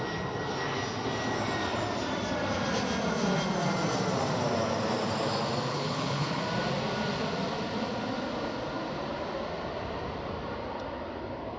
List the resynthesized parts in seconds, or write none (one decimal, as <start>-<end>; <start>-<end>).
5.7-6.4